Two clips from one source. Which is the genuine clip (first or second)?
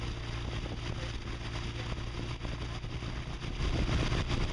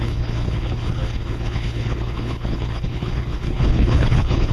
first